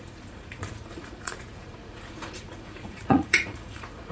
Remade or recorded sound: remade